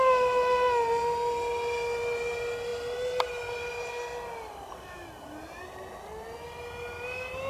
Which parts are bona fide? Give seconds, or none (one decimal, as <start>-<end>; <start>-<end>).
0.0-7.5